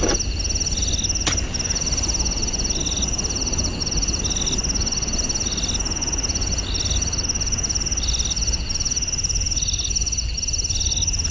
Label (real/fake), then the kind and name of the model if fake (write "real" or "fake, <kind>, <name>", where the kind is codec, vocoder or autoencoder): real